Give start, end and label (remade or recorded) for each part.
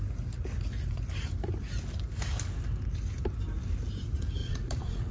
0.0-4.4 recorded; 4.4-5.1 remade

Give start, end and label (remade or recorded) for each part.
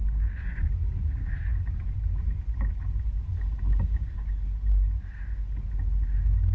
0.0-6.5 recorded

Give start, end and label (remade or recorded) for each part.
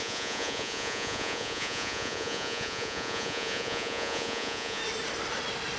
0.0-4.8 remade; 4.8-5.8 recorded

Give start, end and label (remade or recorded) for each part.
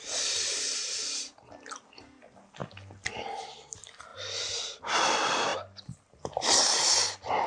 0.0-7.5 recorded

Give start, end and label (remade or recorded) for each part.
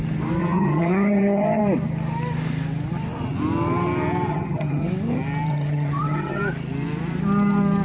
0.0-0.4 recorded; 0.4-1.6 remade; 1.6-4.3 recorded; 4.3-4.9 remade; 4.9-5.5 recorded; 5.5-6.4 remade; 6.4-7.8 recorded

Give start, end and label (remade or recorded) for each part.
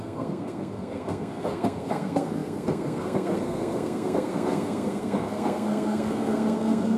0.0-7.0 remade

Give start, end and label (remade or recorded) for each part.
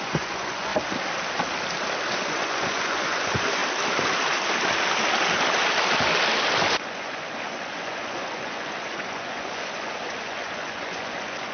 0.0-0.7 remade; 0.7-2.1 recorded; 2.1-3.6 remade; 3.6-6.7 recorded; 6.7-11.5 remade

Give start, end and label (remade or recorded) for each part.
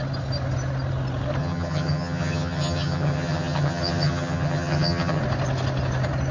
0.0-1.4 recorded; 1.4-5.2 remade; 5.2-6.3 recorded